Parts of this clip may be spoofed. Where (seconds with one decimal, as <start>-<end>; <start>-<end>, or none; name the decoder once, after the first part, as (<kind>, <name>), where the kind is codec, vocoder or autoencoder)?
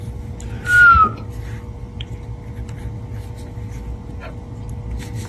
none